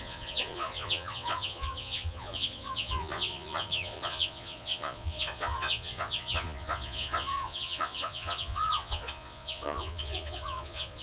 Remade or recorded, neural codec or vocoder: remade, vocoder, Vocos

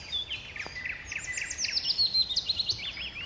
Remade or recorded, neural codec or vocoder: recorded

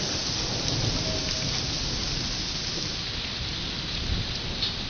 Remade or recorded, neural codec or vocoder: recorded